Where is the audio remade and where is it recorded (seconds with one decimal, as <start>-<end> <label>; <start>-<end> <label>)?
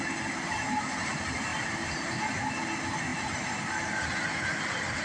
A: 0.0-1.5 recorded; 1.5-2.4 remade; 2.4-5.0 recorded